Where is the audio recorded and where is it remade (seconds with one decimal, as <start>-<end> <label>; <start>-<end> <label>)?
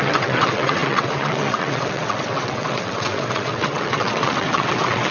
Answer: 0.0-5.1 remade